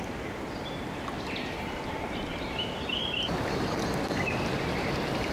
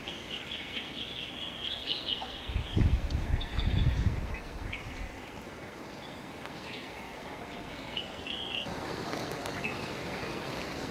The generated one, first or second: second